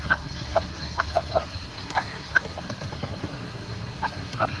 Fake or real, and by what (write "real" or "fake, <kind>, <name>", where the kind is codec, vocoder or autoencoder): fake, codec, SNAC